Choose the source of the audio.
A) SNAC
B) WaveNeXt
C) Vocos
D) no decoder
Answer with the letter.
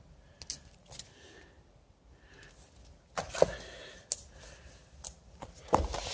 D